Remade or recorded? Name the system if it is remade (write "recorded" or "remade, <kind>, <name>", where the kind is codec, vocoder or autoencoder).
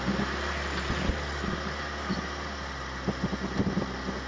recorded